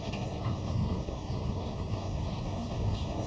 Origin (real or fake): fake